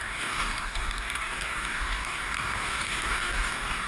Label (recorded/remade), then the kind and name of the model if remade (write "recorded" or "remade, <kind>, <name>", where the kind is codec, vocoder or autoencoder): remade, codec, DAC